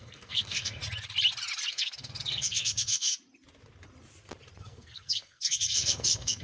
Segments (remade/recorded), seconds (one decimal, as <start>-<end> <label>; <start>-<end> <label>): 0.0-0.8 remade; 0.8-1.7 recorded; 1.7-3.1 remade; 3.1-4.6 recorded; 4.6-6.4 remade